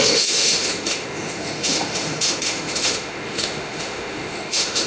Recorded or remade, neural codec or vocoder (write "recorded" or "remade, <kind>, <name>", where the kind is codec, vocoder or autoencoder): remade, autoencoder, DAC-VAE